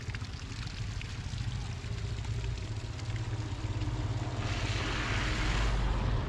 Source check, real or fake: real